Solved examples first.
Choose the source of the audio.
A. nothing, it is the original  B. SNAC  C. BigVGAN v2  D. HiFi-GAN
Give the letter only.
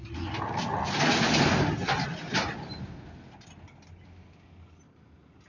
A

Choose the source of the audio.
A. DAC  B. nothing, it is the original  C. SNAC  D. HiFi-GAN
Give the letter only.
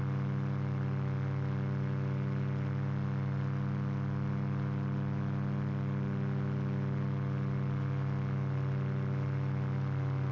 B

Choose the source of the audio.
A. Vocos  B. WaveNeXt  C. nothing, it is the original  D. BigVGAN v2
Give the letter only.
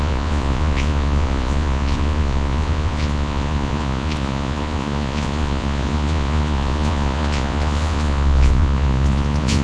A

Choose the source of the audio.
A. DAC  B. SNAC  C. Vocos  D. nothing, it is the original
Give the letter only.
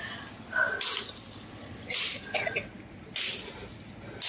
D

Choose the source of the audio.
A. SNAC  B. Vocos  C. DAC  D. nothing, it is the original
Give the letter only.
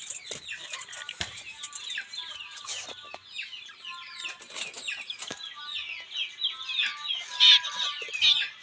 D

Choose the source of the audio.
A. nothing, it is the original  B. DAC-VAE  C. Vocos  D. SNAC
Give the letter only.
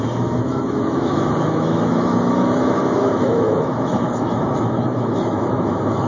B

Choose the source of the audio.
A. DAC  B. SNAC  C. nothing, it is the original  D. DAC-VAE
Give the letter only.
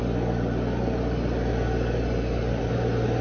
C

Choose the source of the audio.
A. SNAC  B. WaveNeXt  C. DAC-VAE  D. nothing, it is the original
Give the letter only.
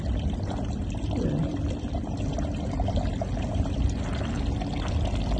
D